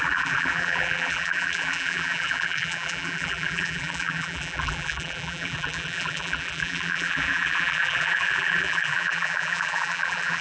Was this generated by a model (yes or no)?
yes